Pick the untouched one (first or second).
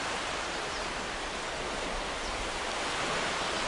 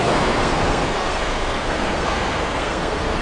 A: first